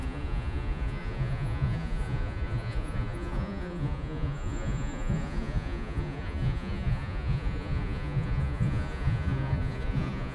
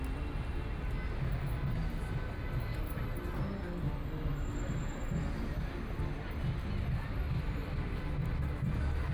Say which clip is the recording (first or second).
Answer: second